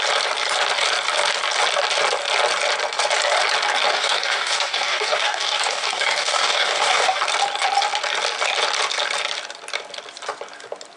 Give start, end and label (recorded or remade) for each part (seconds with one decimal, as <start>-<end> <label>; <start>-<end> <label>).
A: 0.0-3.9 recorded; 3.9-7.2 remade; 7.2-11.0 recorded